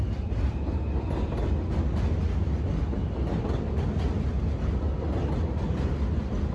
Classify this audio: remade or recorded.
recorded